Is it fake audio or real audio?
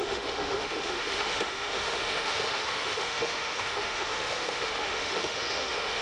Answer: fake